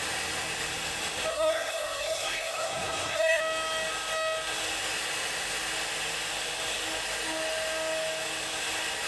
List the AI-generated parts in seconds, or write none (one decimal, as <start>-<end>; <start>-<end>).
1.3-3.4